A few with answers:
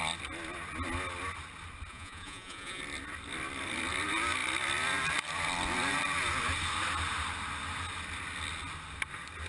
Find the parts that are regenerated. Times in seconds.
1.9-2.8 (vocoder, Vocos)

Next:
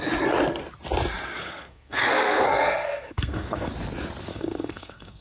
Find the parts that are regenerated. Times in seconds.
1.4-3.7 (codec, SNAC); 4.3-5.2

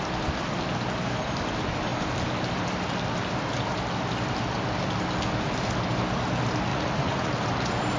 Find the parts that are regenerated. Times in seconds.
6.7-7.3 (vocoder, Vocos)